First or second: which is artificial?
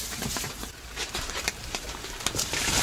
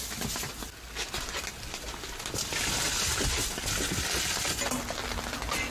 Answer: first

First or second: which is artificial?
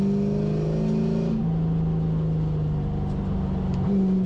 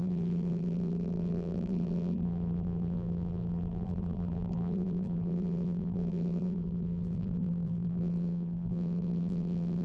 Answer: second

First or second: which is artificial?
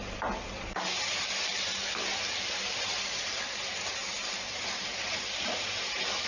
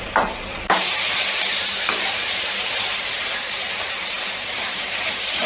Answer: second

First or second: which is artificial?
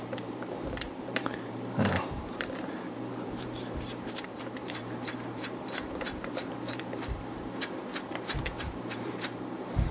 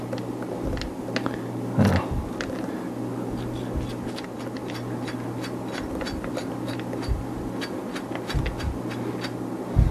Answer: first